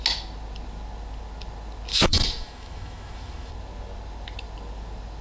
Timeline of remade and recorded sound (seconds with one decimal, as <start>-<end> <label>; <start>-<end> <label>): 0.0-1.9 recorded; 1.9-3.5 remade; 3.5-5.2 recorded